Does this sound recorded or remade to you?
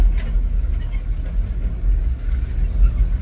recorded